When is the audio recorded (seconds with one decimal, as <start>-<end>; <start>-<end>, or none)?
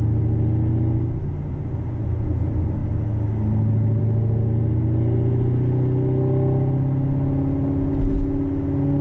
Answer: 0.0-9.0